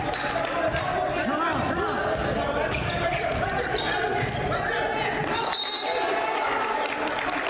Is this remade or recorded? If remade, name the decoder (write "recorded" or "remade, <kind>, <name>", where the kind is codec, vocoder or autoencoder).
recorded